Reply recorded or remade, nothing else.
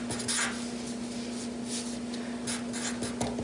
recorded